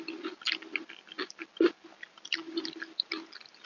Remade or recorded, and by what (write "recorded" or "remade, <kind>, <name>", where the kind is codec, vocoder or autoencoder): recorded